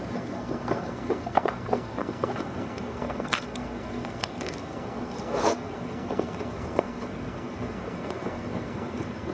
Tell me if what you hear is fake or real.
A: fake